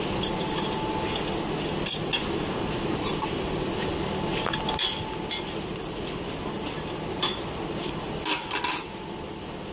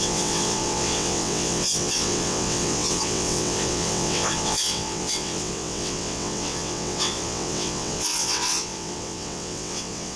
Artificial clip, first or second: second